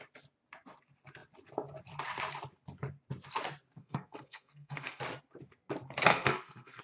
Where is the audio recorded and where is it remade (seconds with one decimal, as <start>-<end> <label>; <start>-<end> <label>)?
0.0-3.8 recorded; 3.8-5.0 remade; 5.0-6.1 recorded; 6.1-6.8 remade